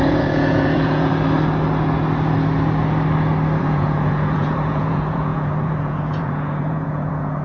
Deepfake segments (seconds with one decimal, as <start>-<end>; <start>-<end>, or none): 0.0-1.1; 3.6-7.4

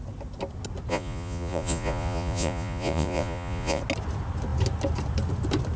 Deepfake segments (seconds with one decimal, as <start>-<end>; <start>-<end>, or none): 0.9-3.8

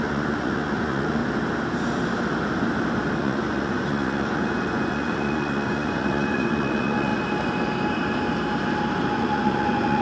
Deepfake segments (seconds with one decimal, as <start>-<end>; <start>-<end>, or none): 0.0-1.2; 3.2-7.1; 9.1-10.0

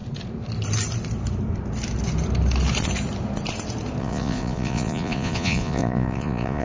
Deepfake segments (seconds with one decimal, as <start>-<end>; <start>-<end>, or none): 4.0-6.6

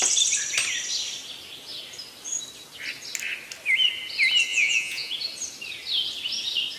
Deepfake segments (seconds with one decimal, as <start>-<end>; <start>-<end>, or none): 4.5-5.1

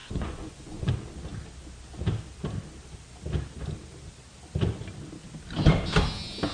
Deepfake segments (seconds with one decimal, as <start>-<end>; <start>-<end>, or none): 0.0-0.9

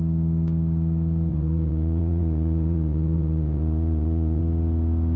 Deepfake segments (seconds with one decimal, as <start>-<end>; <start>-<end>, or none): 1.3-4.4

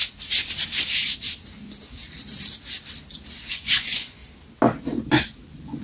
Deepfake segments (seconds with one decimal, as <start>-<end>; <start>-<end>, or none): 3.5-4.2